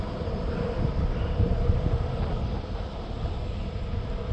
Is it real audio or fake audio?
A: fake